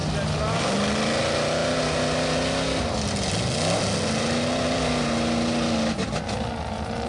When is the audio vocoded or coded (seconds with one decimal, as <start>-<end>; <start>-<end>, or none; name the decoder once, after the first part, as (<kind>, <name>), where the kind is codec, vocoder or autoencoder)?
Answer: none

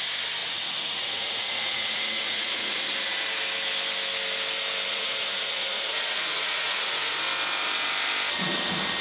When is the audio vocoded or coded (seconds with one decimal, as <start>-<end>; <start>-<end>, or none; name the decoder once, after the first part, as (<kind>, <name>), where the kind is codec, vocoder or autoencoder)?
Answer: 0.4-2.8 (vocoder, Vocos); 4.9-7.1

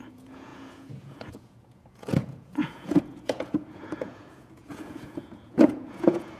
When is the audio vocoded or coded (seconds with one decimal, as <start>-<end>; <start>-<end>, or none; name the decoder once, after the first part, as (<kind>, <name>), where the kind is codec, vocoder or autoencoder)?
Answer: 0.0-6.4 (vocoder, Vocos)

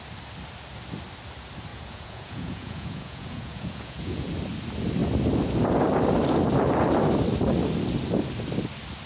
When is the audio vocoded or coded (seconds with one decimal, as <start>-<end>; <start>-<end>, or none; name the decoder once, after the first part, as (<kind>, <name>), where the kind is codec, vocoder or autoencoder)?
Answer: 1.7-4.3 (vocoder, Vocos)

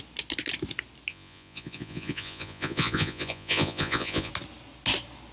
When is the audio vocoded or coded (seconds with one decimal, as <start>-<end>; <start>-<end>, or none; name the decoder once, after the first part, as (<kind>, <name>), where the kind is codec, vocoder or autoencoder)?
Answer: 1.1-4.3 (vocoder, Vocos)

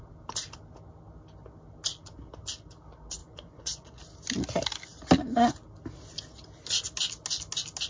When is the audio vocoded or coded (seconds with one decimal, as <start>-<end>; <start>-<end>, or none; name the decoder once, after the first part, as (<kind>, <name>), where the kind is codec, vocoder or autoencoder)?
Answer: 3.2-4.0 (vocoder, Vocos)

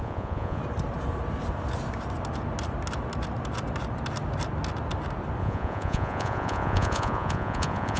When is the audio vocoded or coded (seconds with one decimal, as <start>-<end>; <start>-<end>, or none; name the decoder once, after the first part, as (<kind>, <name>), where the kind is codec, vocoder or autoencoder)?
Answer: 0.0-0.6 (vocoder, Vocos); 5.4-8.0

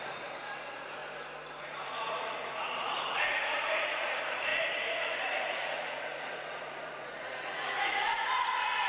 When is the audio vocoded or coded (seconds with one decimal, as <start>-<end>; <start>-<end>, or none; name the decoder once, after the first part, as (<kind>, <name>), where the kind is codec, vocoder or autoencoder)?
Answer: 0.0-1.0 (vocoder, Vocos); 1.6-8.9